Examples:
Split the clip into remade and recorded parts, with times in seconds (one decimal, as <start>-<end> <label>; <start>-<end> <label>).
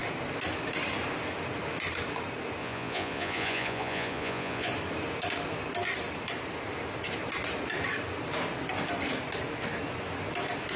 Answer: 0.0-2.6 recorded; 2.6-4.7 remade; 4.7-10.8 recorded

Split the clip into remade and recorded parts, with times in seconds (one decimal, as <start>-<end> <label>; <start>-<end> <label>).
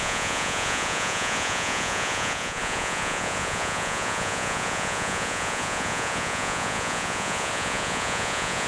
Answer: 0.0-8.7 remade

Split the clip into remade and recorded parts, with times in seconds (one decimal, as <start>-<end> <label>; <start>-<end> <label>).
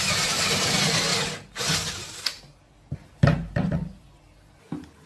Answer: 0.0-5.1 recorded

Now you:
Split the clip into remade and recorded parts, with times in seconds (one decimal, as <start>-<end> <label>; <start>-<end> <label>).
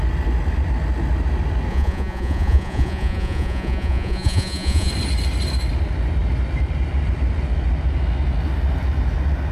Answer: 0.0-1.7 recorded; 1.7-4.9 remade; 4.9-9.5 recorded